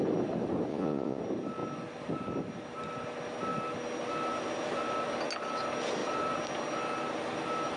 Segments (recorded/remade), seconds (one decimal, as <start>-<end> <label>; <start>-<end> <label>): 0.0-0.7 recorded; 0.7-1.2 remade; 1.2-7.8 recorded